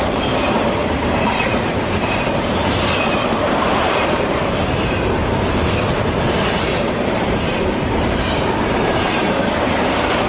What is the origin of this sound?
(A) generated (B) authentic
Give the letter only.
A